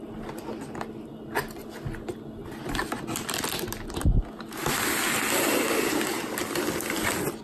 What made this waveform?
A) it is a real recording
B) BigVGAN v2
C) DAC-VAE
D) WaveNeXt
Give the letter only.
A